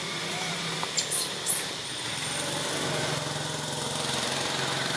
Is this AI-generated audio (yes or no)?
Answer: yes